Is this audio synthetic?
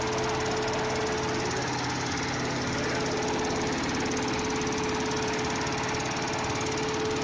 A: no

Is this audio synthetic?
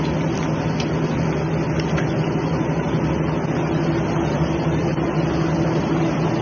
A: no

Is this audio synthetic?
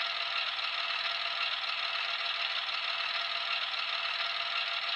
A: no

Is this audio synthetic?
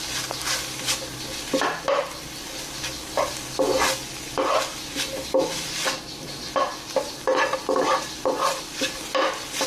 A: no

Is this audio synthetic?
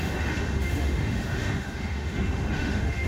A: yes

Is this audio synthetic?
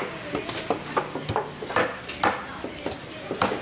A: no